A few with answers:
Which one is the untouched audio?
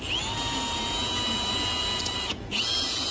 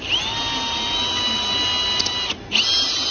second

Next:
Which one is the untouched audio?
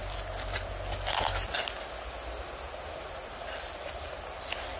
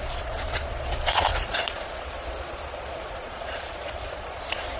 first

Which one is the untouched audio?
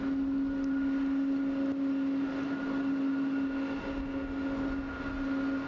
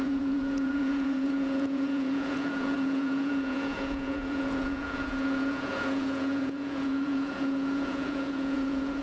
first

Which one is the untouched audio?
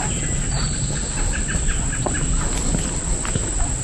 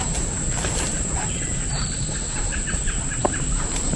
first